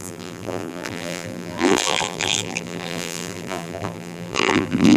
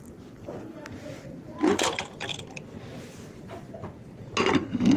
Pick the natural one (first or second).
second